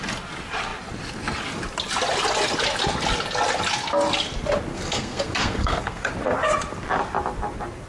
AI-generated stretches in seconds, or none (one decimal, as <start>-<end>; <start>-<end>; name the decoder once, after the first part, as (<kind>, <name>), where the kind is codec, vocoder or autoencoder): 4.7-6.1 (codec, SNAC)